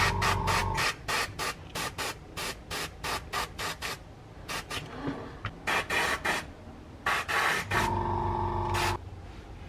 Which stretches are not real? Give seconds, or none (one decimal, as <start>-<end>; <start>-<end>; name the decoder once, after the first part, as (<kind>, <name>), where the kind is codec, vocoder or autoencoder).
none